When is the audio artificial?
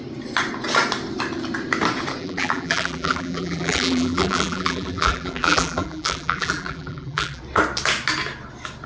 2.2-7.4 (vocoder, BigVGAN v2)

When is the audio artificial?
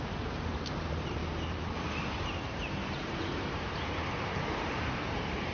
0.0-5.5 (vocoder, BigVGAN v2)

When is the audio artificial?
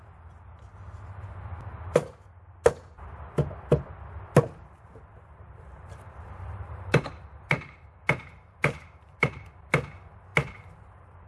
4.6-9.4 (vocoder, BigVGAN v2); 10.3-11.3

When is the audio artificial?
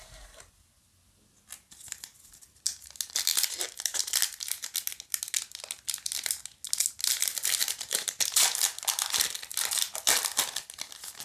7.6-8.6 (vocoder, BigVGAN v2)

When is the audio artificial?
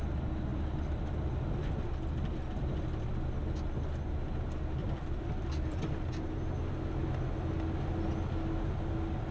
0.5-1.3 (vocoder, BigVGAN v2); 4.8-5.8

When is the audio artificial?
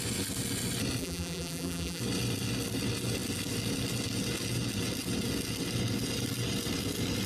1.0-2.0 (vocoder, BigVGAN v2)